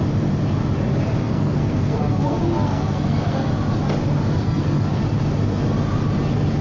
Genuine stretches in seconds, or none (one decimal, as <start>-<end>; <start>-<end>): 0.0-1.2; 3.5-4.4; 5.0-6.6